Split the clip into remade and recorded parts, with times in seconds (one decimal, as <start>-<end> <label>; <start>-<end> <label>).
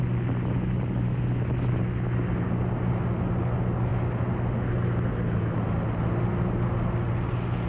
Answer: 0.0-7.7 recorded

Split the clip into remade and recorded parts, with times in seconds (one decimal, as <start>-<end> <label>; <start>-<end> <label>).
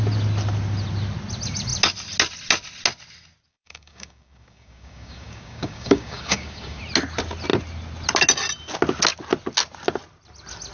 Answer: 0.0-3.5 recorded; 3.5-6.8 remade; 6.8-10.7 recorded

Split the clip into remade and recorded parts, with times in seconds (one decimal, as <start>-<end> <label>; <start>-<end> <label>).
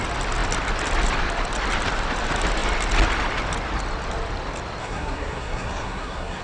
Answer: 0.0-4.8 recorded; 4.8-6.4 remade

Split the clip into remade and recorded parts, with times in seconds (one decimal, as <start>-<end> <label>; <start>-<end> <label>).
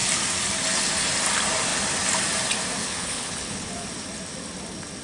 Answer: 0.0-2.8 recorded; 2.8-3.7 remade; 3.7-5.0 recorded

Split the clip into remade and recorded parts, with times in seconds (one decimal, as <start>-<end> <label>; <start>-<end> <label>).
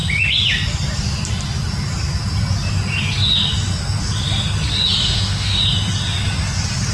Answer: 0.0-5.0 recorded; 5.0-5.6 remade; 5.6-6.9 recorded